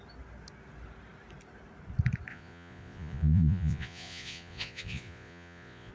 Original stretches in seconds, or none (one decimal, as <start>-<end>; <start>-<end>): 0.0-2.3